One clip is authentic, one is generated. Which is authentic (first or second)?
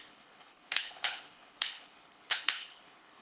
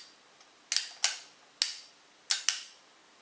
second